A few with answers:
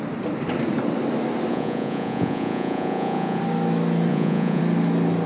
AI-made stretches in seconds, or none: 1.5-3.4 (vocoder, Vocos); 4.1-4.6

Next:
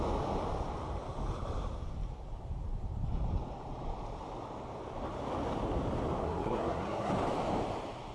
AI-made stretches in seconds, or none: 6.2-7.1 (codec, SNAC)

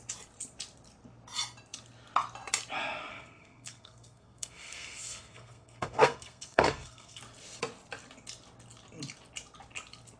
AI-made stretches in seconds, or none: 3.1-7.2 (codec, SNAC)

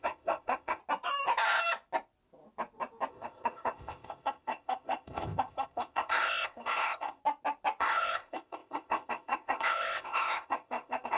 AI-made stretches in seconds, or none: 0.0-0.8 (codec, ZipCodec); 3.1-7.2; 7.8-11.2

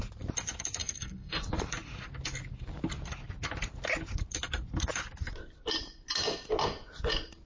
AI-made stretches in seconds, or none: 0.8-1.4 (codec, SNAC)

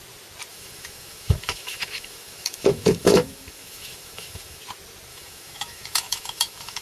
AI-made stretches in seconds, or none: 0.5-4.6 (autoencoder, DAC-VAE); 5.1-6.8